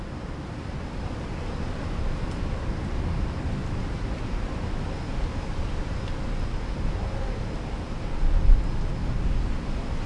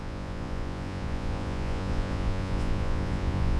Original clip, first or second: first